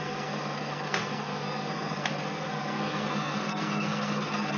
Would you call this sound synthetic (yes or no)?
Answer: yes